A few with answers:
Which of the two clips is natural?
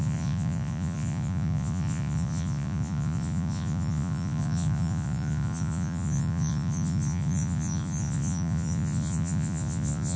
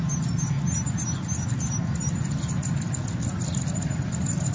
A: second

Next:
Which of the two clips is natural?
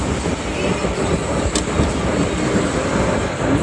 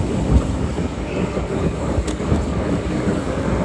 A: first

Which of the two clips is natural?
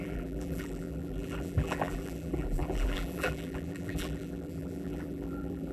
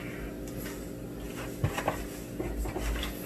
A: second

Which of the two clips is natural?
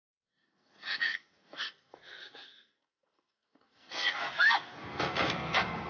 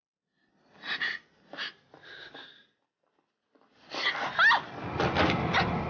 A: second